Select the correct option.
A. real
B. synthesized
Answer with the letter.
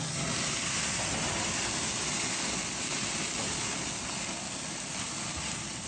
A